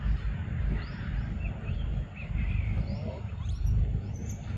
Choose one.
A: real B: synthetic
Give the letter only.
B